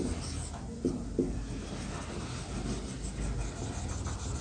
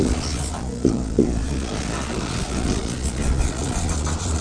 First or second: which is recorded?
first